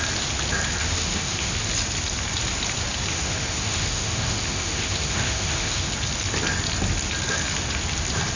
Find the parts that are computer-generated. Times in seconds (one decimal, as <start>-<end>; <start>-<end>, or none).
0.8-1.5; 3.1-5.9